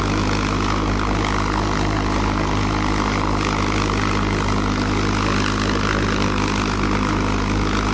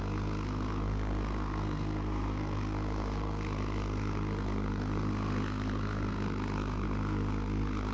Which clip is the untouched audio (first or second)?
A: first